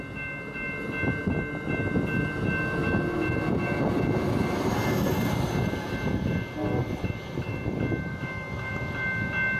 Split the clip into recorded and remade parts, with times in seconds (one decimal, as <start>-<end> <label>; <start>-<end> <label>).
0.0-8.1 recorded; 8.1-8.7 remade; 8.7-9.6 recorded